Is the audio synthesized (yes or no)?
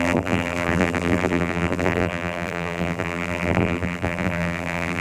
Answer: yes